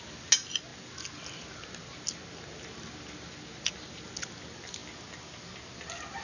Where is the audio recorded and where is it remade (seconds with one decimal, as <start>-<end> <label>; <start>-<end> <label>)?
0.0-6.2 recorded